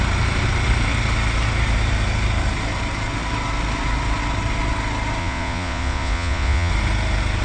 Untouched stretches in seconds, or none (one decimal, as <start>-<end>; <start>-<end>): 0.0-5.2; 6.7-7.4